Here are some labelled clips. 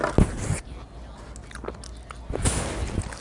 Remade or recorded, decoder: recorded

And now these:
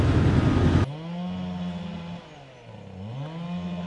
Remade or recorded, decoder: recorded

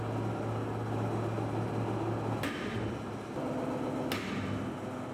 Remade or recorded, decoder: recorded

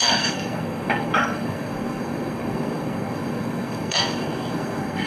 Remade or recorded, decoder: remade, codec, SNAC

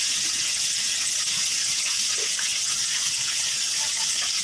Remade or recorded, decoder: remade, vocoder, Vocos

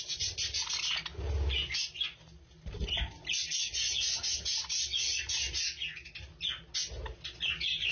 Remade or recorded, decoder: recorded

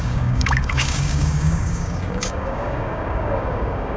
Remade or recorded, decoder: remade, codec, DAC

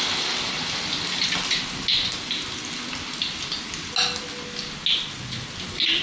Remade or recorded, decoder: recorded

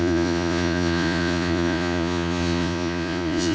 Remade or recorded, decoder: remade, vocoder, Vocos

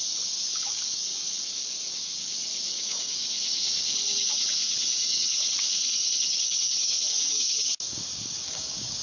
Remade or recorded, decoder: remade, codec, DAC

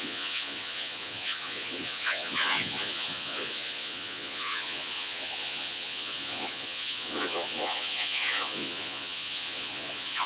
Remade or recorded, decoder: remade, vocoder, Vocos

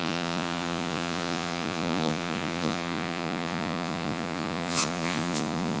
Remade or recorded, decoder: remade, vocoder, Vocos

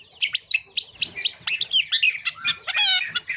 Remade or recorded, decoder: recorded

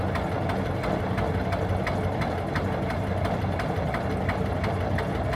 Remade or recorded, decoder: recorded